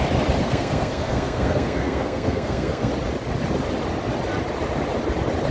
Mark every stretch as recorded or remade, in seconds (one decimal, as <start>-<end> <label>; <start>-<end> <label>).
0.0-0.4 recorded; 0.4-2.9 remade; 2.9-5.5 recorded